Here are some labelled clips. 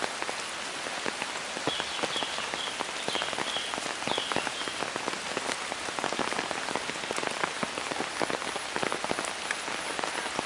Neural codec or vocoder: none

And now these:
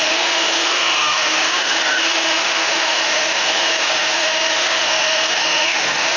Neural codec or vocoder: autoencoder, DAC-VAE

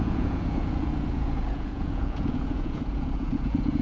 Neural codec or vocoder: vocoder, Vocos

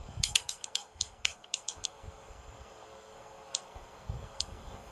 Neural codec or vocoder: codec, SNAC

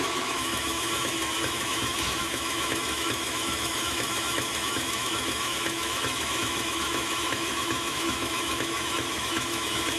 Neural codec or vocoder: autoencoder, DAC-VAE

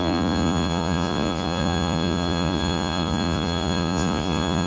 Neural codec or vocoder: vocoder, Vocos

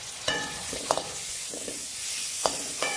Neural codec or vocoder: vocoder, Vocos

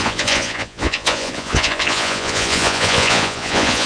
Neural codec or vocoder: vocoder, Vocos